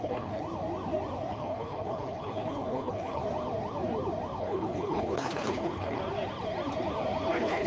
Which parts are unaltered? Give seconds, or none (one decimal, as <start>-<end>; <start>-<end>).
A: 0.4-1.3; 3.2-4.4; 6.0-7.3